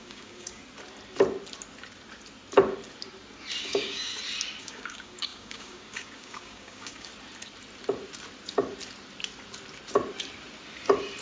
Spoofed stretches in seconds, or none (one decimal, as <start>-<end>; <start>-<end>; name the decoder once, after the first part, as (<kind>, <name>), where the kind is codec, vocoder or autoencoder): 0.0-0.6 (codec, DAC); 3.6-4.1; 4.6-7.1